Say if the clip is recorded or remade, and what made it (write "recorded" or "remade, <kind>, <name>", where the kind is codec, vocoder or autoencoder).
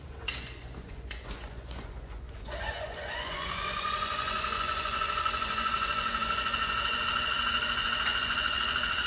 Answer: remade, vocoder, Vocos